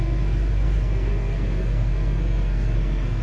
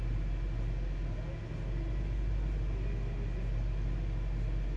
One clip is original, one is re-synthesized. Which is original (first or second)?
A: second